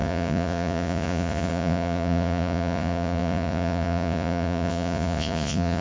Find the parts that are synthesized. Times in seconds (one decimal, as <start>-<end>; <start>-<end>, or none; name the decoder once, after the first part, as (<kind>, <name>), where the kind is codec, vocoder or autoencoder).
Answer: 0.0-5.8 (vocoder, Vocos)